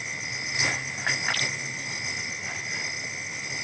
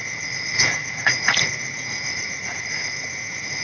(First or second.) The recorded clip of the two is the first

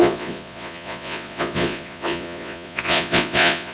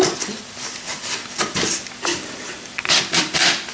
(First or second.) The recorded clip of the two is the second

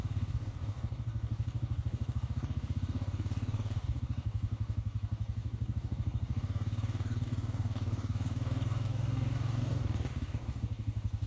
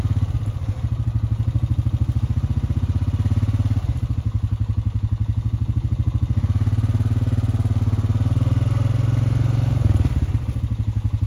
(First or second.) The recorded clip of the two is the second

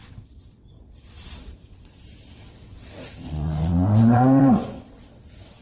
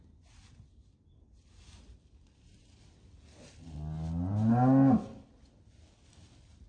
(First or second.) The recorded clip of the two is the second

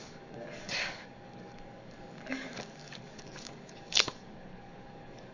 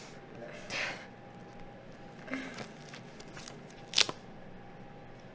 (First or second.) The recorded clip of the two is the second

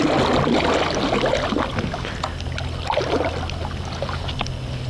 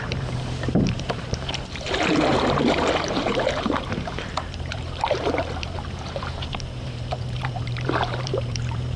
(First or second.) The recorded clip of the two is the first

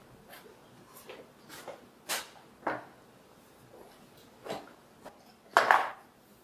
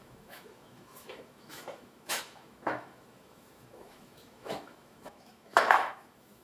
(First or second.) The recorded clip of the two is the first